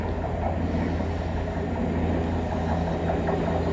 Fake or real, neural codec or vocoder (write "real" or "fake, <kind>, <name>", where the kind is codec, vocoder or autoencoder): real